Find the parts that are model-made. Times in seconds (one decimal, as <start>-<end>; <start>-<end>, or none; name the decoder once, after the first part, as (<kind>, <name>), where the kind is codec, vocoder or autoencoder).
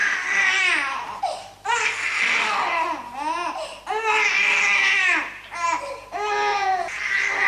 6.5-7.0 (vocoder, Vocos)